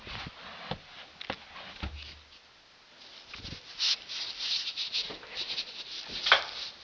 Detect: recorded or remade recorded